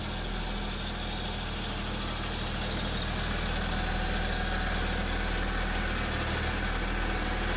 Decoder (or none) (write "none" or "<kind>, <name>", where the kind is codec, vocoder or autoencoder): none